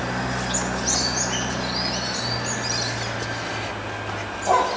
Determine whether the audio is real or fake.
real